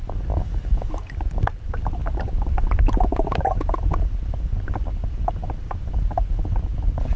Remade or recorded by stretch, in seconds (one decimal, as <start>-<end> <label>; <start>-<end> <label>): 0.0-7.2 recorded